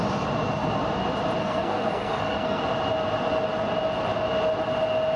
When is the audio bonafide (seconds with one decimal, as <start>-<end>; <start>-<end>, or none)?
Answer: 0.0-1.4; 2.6-5.2